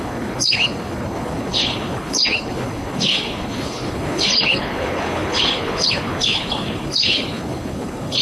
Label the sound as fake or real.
fake